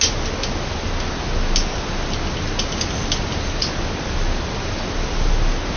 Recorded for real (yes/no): yes